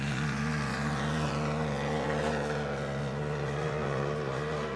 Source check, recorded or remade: remade